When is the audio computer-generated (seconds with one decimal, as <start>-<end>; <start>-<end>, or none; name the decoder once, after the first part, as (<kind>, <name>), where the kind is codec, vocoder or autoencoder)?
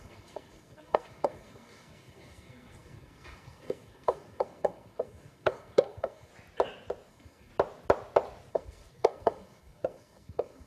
0.0-6.3 (codec, SNAC); 7.1-7.5; 8.5-10.7